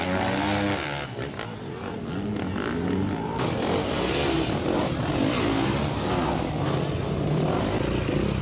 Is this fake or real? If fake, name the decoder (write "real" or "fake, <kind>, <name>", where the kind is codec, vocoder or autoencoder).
real